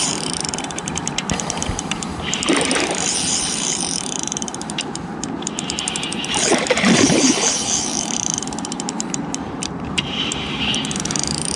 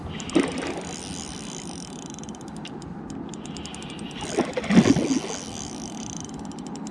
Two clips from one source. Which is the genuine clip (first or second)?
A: second